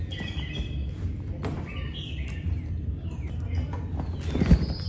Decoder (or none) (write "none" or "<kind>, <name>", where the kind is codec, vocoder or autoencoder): none